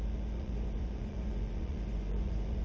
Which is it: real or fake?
fake